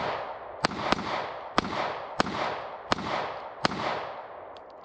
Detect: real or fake real